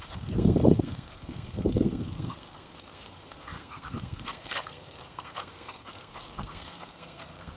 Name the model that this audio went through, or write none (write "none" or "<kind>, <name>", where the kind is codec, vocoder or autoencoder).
codec, SNAC